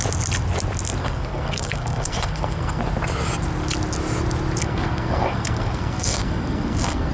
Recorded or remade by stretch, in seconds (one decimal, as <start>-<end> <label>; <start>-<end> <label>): 0.0-1.0 recorded; 1.0-2.8 remade; 2.8-4.6 recorded; 4.6-7.1 remade